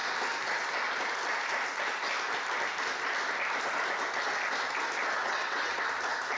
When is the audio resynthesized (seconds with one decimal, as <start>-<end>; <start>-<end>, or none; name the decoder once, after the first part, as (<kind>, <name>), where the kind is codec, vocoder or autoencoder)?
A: 5.2-5.8 (vocoder, WaveNeXt)